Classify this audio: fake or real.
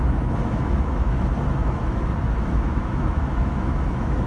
fake